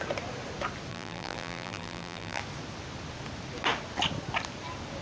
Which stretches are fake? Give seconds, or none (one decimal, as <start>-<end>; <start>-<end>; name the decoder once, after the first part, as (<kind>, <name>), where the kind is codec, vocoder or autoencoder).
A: 0.9-2.4 (vocoder, BigVGAN v2)